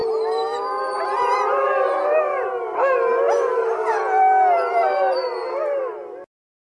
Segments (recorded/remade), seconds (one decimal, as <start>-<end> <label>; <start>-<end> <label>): 0.0-4.0 remade; 4.0-4.7 recorded; 4.7-5.8 remade; 5.8-6.7 recorded